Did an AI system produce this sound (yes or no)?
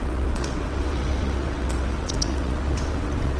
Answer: yes